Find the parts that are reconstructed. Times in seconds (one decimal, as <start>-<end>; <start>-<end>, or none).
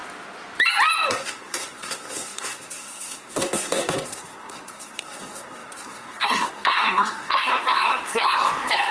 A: 1.1-8.9